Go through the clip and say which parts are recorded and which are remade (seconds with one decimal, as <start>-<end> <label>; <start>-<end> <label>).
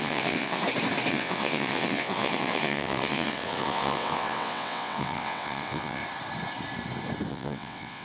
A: 0.0-0.6 remade; 0.6-1.1 recorded; 1.1-6.0 remade; 6.0-7.3 recorded; 7.3-8.0 remade